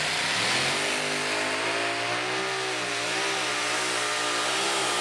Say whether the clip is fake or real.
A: real